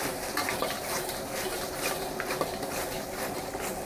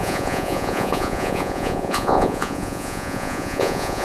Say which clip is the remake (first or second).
second